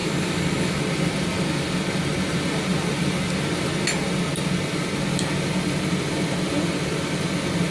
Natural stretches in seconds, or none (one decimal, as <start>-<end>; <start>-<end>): 0.8-7.7